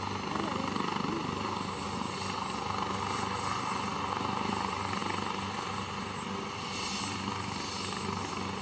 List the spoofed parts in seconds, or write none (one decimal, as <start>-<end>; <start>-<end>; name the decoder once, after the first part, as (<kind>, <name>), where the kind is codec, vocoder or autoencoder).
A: none